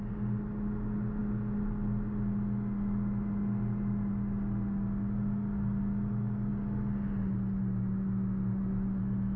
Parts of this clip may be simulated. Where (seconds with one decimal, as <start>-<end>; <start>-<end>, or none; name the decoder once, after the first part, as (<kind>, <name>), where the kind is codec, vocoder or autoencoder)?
none